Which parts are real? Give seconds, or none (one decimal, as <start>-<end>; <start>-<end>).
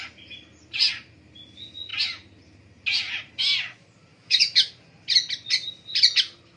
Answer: 0.0-4.1; 4.7-6.6